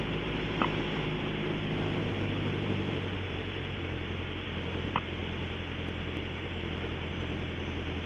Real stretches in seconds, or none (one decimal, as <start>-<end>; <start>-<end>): 5.2-6.2